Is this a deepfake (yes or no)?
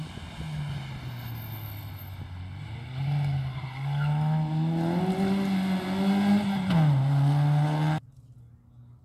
no